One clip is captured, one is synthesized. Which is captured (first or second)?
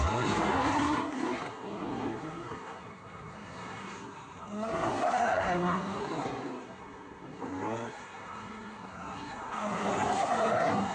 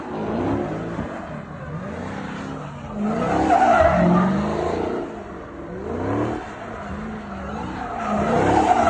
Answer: second